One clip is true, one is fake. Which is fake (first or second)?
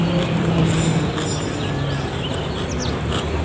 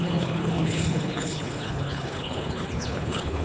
second